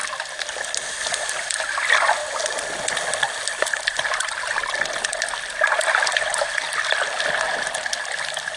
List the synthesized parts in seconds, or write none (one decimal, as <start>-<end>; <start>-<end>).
none